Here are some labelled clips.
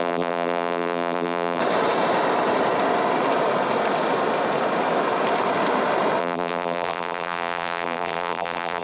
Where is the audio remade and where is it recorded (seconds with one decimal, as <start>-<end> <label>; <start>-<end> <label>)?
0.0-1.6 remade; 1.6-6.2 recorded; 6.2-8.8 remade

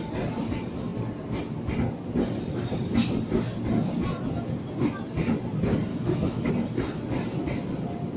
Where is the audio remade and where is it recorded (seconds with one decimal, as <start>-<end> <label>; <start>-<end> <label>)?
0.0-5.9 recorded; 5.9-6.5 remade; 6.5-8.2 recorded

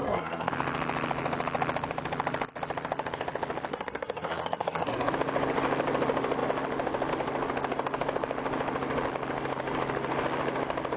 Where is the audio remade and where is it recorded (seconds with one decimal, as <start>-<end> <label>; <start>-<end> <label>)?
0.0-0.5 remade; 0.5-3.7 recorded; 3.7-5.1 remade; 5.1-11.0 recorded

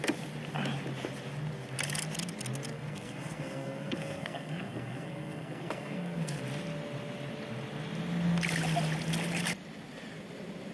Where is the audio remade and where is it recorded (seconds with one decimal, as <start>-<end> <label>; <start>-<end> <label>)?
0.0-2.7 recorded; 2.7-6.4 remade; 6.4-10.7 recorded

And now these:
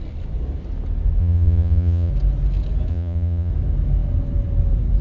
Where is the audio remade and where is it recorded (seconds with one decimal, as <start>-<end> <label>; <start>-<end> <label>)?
0.0-1.2 recorded; 1.2-2.1 remade; 2.1-2.9 recorded; 2.9-3.5 remade; 3.5-5.0 recorded

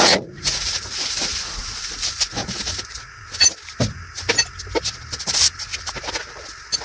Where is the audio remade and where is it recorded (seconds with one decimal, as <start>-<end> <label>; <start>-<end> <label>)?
0.0-2.4 remade; 2.4-6.8 recorded